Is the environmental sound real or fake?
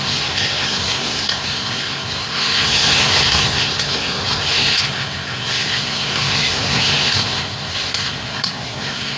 fake